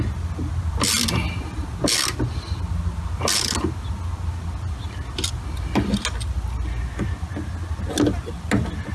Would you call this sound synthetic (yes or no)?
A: no